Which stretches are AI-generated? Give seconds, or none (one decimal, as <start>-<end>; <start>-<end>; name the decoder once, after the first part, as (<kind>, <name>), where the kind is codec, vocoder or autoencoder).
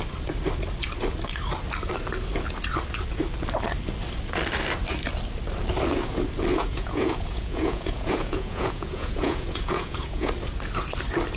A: 6.5-10.3 (vocoder, Vocos)